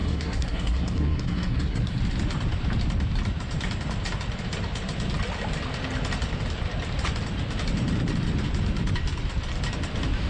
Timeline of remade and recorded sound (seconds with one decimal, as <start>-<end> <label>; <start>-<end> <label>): 0.0-2.0 remade; 2.0-10.3 recorded